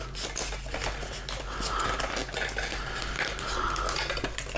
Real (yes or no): yes